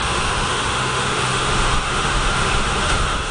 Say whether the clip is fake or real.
fake